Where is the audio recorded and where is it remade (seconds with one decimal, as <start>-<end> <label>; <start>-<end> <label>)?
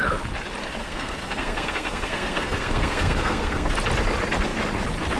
0.0-0.8 recorded; 0.8-3.7 remade; 3.7-5.2 recorded